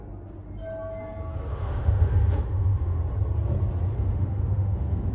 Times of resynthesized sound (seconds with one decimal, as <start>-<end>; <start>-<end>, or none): 1.5-3.0; 3.9-5.1

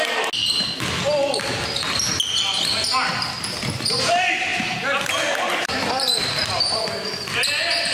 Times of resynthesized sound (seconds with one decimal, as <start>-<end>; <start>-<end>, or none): none

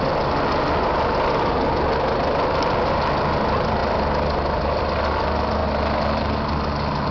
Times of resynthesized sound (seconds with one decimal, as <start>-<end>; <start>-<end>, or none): none

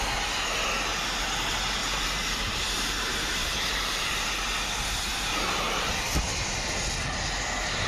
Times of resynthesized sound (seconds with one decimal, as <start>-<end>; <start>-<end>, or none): 1.8-4.3; 5.1-5.9